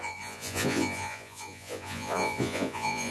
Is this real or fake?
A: fake